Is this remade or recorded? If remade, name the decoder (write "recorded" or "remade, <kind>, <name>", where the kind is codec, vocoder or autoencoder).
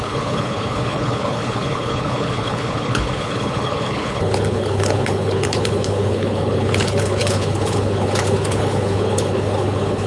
remade, codec, HILCodec